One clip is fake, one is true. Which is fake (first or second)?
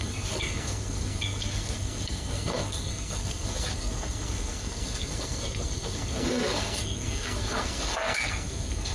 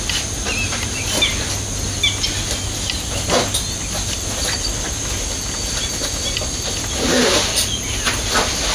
first